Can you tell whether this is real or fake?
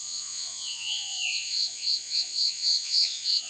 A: fake